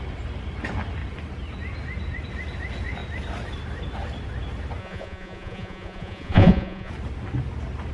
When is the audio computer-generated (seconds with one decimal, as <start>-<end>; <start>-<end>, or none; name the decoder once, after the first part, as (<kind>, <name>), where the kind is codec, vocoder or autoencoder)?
4.8-6.9 (vocoder, Vocos)